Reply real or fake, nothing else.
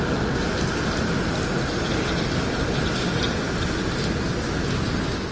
real